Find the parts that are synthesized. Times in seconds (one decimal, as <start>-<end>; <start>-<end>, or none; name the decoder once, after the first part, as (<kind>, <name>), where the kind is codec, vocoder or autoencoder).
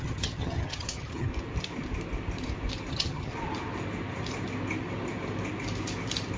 0.0-1.3 (vocoder, HiFi-GAN); 2.9-3.3